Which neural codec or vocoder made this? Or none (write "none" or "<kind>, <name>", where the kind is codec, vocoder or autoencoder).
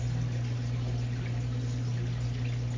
none